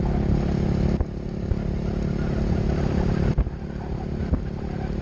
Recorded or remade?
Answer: recorded